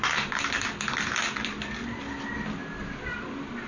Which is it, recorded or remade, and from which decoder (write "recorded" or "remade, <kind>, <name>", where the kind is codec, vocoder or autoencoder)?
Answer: recorded